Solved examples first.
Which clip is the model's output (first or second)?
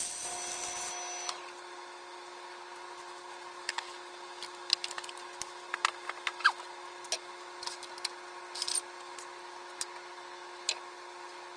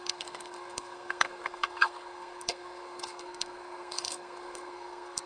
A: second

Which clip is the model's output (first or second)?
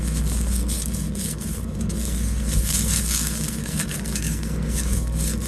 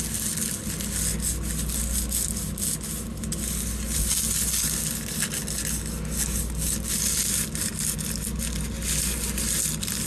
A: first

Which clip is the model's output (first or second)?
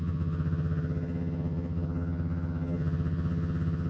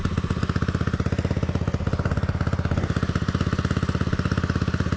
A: first